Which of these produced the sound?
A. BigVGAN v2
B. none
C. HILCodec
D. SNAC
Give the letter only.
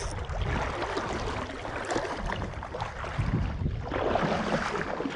B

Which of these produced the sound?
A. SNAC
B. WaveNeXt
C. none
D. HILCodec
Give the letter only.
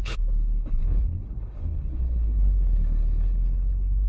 D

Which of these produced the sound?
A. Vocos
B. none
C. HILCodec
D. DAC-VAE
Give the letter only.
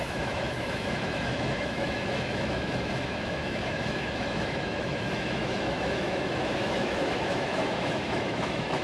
D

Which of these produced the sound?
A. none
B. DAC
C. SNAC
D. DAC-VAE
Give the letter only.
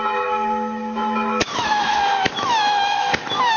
D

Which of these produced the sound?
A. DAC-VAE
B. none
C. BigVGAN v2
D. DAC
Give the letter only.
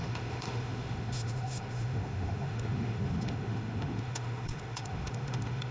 A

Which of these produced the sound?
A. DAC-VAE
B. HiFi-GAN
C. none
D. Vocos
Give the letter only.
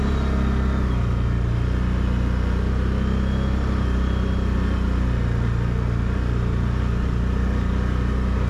C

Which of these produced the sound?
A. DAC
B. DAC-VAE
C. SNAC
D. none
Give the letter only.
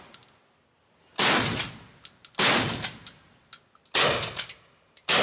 D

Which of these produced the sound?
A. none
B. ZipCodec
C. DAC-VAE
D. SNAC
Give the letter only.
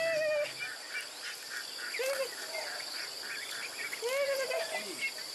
A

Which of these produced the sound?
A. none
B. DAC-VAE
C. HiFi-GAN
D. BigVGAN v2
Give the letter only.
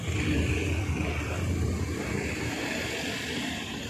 A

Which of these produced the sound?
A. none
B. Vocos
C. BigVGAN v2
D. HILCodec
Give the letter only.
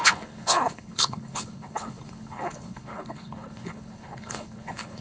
D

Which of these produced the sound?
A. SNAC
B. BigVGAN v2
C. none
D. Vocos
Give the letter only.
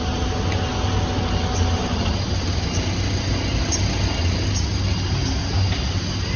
C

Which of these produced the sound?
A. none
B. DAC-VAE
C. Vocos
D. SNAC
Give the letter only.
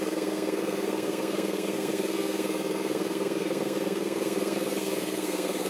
D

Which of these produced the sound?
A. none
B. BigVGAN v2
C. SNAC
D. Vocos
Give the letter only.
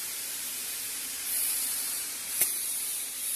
B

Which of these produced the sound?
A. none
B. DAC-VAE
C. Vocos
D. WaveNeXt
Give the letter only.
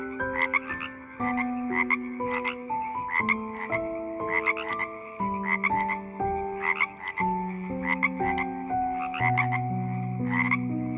A